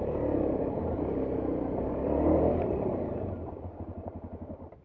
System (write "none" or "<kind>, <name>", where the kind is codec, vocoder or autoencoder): vocoder, BigVGAN v2